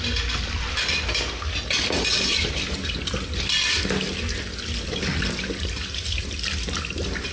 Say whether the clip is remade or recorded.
recorded